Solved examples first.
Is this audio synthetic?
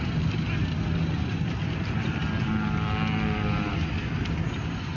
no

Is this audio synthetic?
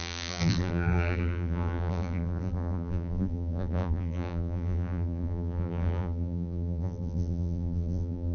yes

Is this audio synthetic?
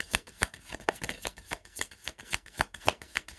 yes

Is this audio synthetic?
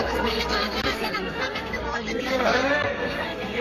yes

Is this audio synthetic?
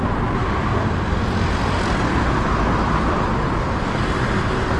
no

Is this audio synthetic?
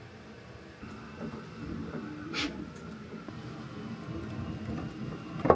no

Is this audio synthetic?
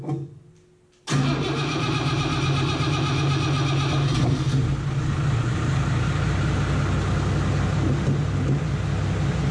no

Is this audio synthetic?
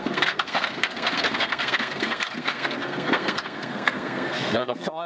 yes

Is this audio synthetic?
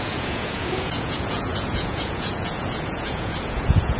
yes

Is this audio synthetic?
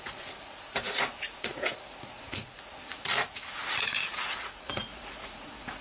yes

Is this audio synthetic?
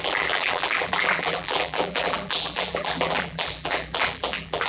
yes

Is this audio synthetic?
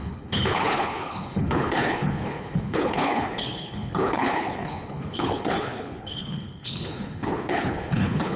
yes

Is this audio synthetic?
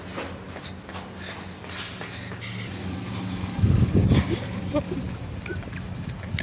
no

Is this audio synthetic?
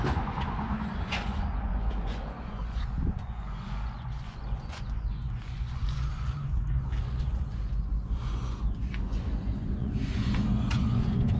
yes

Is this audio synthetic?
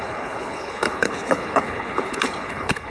yes